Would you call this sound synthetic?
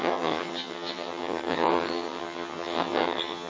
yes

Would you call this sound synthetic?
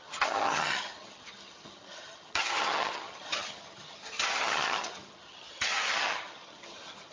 yes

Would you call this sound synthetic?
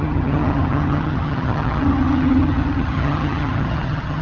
yes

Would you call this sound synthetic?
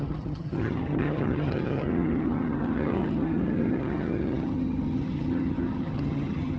yes